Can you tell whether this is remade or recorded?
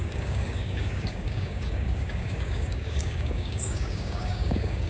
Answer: remade